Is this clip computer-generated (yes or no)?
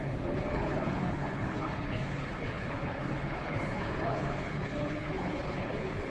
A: yes